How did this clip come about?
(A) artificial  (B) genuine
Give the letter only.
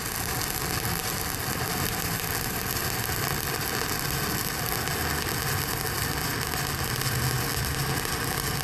B